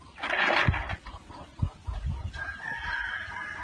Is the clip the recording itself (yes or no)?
yes